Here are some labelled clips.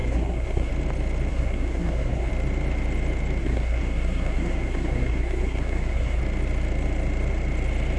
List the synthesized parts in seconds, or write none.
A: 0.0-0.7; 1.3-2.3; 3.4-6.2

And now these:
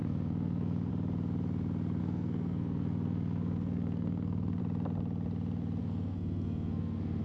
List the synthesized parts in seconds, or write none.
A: 0.0-0.9; 2.0-4.6; 5.8-7.2

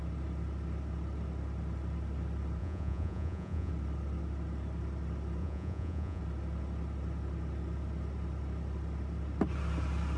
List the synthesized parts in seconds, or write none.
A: 2.6-3.7; 5.4-6.2

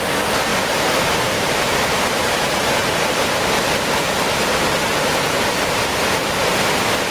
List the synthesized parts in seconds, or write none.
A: 0.5-3.6

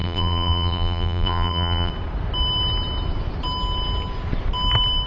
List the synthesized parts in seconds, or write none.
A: 0.0-1.9